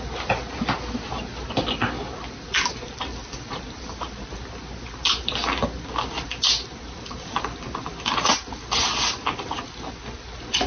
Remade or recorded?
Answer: recorded